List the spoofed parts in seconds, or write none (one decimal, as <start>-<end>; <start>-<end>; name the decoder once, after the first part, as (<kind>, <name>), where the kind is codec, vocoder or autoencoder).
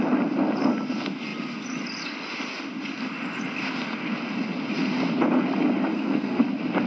5.9-6.4 (codec, SNAC)